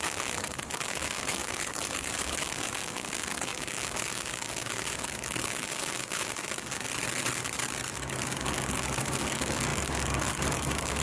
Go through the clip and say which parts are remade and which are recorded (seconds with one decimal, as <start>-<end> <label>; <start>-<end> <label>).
0.0-6.9 remade; 6.9-7.9 recorded; 7.9-11.0 remade